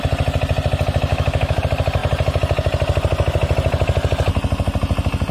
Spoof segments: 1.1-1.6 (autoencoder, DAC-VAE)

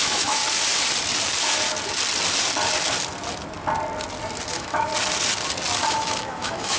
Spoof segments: 0.0-0.4 (autoencoder, DAC-VAE); 4.5-4.9; 5.9-6.8

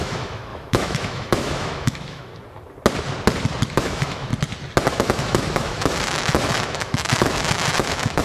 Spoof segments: 0.0-2.3 (autoencoder, DAC-VAE); 3.7-4.3; 4.9-8.2

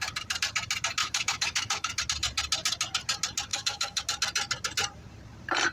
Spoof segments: 1.0-2.0 (autoencoder, DAC-VAE); 3.5-4.0

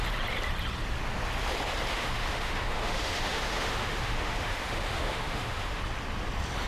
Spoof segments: 1.9-5.8 (autoencoder, DAC-VAE)

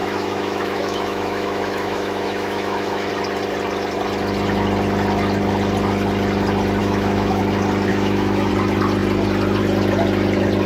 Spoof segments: 0.0-3.1 (autoencoder, DAC-VAE); 6.8-7.4; 7.9-8.5